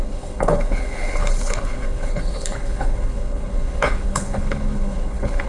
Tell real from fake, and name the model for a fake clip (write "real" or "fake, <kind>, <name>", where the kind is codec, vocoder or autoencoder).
fake, codec, HILCodec